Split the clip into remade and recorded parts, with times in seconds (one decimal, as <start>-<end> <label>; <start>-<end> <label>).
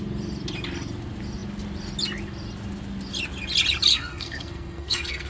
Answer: 0.0-3.9 recorded; 3.9-5.3 remade